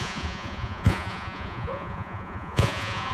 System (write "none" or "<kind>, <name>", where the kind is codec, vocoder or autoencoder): vocoder, Vocos